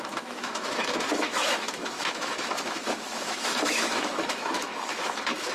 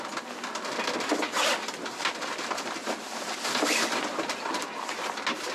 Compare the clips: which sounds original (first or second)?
second